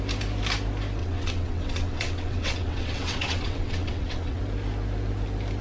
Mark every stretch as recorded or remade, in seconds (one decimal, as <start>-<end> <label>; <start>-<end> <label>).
0.0-1.0 recorded; 1.0-4.4 remade; 4.4-5.6 recorded